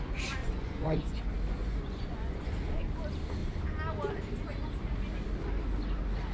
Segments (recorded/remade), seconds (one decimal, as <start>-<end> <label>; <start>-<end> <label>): 0.0-0.4 recorded; 0.4-1.2 remade; 1.2-1.6 recorded; 1.6-2.5 remade; 2.5-6.3 recorded